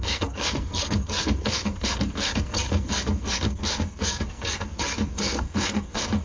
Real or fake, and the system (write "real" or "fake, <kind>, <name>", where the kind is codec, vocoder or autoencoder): fake, codec, SNAC